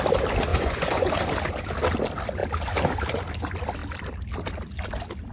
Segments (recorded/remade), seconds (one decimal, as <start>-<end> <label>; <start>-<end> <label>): 0.0-0.5 recorded; 0.5-1.1 remade; 1.1-5.3 recorded